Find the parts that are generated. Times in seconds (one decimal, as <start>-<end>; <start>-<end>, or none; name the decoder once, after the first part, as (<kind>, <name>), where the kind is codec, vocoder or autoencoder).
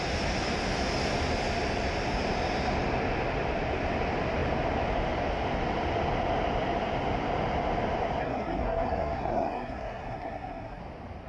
8.2-10.8 (codec, SNAC)